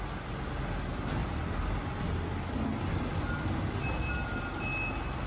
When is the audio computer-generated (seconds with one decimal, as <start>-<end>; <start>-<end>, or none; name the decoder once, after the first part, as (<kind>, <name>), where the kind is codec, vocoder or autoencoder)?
none